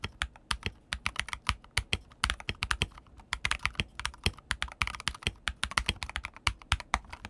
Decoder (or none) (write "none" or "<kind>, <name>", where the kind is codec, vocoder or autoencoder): none